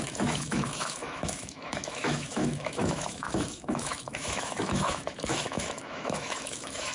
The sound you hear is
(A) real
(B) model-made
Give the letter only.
B